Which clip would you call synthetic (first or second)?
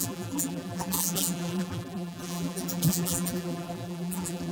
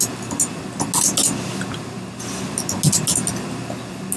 first